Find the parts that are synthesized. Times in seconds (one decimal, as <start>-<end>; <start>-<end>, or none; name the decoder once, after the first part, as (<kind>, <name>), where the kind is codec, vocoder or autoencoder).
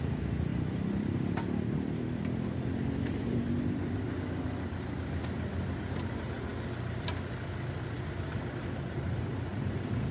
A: 0.5-4.1 (vocoder, BigVGAN v2); 9.5-10.1